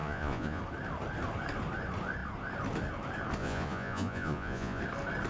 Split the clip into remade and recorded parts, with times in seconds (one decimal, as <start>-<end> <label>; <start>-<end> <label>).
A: 0.0-0.6 remade; 0.6-3.4 recorded; 3.4-4.8 remade; 4.8-5.3 recorded